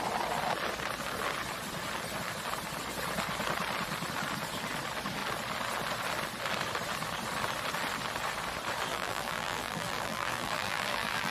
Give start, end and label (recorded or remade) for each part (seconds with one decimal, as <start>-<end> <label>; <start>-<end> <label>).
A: 0.0-8.9 recorded; 8.9-11.3 remade